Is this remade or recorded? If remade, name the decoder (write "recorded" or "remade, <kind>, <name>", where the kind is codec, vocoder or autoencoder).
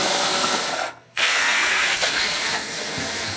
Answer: remade, codec, SNAC